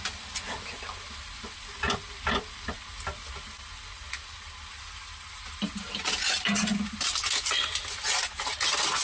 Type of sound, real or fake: real